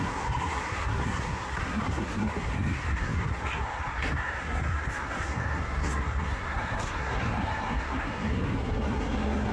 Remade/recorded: remade